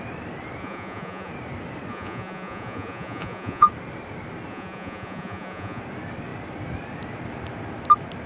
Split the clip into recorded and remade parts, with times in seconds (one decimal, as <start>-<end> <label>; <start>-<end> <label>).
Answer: 0.0-0.6 recorded; 0.6-1.3 remade; 1.3-1.9 recorded; 1.9-3.7 remade; 3.7-4.5 recorded; 4.5-5.8 remade; 5.8-8.3 recorded